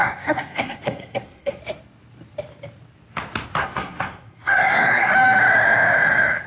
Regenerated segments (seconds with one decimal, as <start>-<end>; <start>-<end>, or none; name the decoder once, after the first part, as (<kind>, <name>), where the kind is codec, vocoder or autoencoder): 0.0-1.6 (codec, SNAC); 3.6-5.1